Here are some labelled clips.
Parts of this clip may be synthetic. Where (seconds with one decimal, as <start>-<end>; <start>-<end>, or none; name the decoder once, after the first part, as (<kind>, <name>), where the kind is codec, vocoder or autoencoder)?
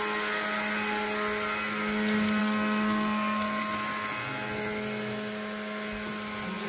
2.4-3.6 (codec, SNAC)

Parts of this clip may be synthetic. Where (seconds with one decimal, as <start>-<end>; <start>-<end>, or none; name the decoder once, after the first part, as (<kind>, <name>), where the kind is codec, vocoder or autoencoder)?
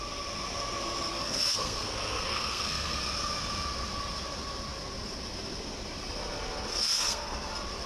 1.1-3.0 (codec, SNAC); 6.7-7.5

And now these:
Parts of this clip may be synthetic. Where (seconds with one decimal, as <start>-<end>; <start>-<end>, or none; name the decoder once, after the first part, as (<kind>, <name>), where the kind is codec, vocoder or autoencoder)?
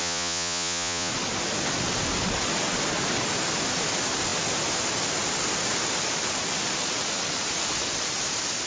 0.0-1.1 (vocoder, Vocos)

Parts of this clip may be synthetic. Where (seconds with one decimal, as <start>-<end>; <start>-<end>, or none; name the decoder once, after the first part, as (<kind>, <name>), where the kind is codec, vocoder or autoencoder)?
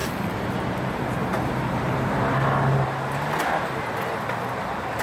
0.0-2.2 (vocoder, BigVGAN v2)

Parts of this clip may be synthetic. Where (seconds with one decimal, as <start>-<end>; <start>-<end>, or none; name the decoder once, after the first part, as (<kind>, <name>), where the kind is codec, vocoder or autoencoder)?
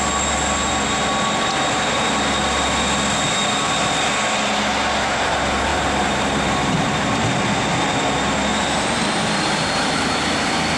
5.7-7.3 (vocoder, BigVGAN v2); 8.5-10.2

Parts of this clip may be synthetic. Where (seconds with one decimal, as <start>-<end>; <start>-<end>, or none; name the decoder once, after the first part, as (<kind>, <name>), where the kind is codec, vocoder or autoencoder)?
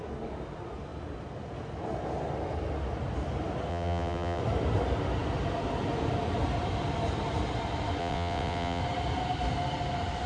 3.7-4.4 (vocoder, WaveNeXt); 8.0-8.8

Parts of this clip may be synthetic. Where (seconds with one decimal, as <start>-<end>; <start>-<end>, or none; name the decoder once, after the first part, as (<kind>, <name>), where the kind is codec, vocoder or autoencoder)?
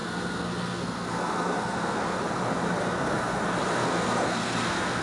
0.0-2.2 (codec, SNAC); 2.8-3.4; 3.8-5.0